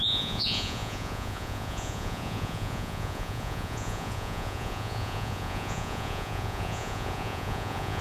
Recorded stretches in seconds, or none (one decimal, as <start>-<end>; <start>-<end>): none